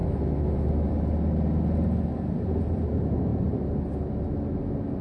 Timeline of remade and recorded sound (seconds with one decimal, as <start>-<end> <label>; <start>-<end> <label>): 0.0-0.9 remade; 0.9-5.0 recorded